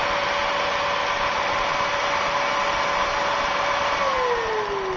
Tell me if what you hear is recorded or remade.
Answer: recorded